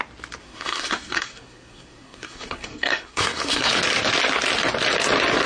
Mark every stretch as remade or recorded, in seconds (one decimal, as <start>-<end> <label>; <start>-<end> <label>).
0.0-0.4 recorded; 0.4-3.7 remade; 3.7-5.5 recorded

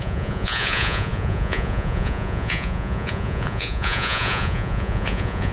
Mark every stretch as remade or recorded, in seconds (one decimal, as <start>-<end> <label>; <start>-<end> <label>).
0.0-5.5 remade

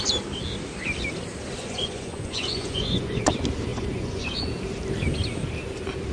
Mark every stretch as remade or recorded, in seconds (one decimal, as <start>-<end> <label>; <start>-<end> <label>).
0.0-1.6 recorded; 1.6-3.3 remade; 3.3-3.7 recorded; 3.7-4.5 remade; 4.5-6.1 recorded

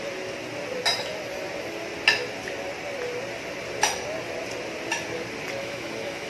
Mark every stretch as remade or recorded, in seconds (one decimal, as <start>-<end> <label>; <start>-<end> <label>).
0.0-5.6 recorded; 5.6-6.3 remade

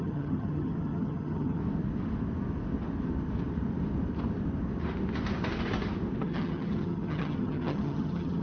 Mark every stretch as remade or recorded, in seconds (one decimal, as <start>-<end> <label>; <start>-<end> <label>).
0.0-1.6 remade; 1.6-6.2 recorded; 6.2-8.4 remade

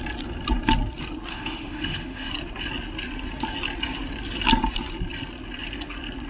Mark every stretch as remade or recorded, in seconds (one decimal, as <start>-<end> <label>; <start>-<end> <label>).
0.0-1.3 recorded; 1.3-2.3 remade; 2.3-6.3 recorded

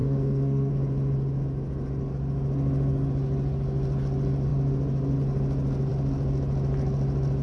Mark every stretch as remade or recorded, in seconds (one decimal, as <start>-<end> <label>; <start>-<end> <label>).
0.0-0.7 remade; 0.7-7.4 recorded